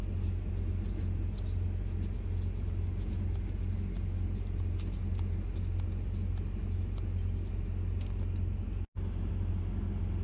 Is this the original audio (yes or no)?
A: yes